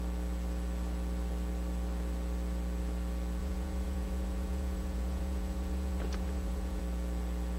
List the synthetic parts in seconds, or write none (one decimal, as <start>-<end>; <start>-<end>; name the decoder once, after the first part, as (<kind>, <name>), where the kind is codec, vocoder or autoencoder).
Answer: 3.4-6.8 (vocoder, Vocos)